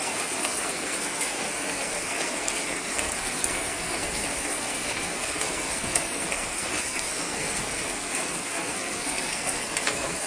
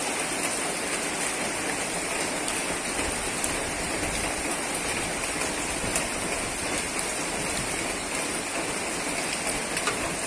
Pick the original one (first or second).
second